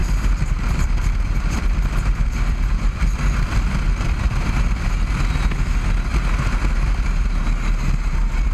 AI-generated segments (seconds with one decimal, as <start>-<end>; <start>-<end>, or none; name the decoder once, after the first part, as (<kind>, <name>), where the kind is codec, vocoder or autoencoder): 0.0-4.3 (vocoder, BigVGAN v2)